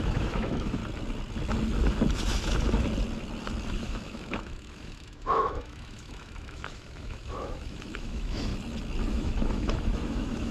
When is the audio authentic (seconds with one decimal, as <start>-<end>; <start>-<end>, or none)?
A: 0.8-3.7; 8.5-9.1